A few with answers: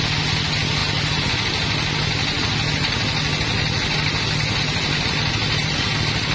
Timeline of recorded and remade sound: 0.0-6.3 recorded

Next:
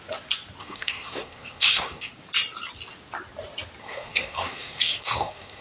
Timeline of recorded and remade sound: 0.0-0.6 recorded; 0.6-2.1 remade; 2.1-3.8 recorded; 3.8-5.6 remade

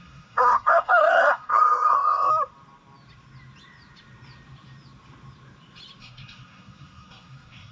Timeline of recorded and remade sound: 0.0-2.3 remade; 2.3-6.0 recorded; 6.0-7.7 remade

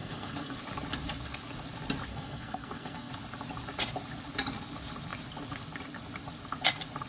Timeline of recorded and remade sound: 0.0-0.6 remade; 0.6-2.1 recorded; 2.1-3.1 remade; 3.1-7.1 recorded

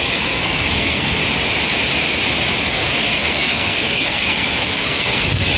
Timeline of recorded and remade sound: 0.0-1.2 remade; 1.2-2.7 recorded; 2.7-5.6 remade

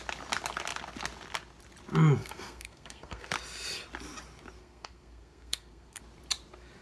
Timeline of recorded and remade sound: 0.0-2.2 recorded; 2.2-3.3 remade; 3.3-4.6 recorded; 4.6-6.0 remade; 6.0-6.8 recorded

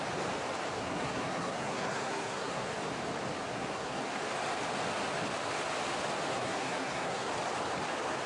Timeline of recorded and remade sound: 0.0-0.8 recorded; 0.8-2.7 remade; 2.7-3.5 recorded; 3.5-4.0 remade; 4.0-6.3 recorded; 6.3-7.3 remade; 7.3-8.3 recorded